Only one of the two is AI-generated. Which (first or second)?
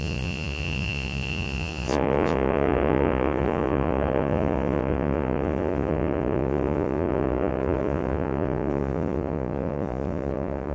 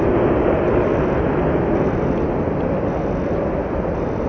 first